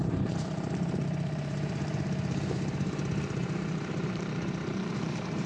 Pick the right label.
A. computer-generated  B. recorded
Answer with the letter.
A